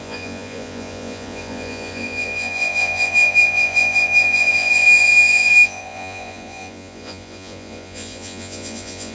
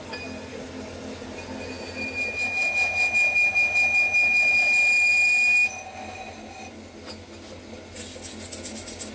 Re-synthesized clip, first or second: first